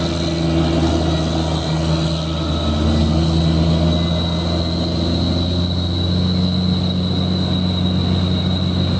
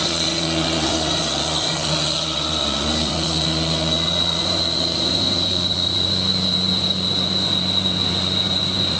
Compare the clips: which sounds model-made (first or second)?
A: second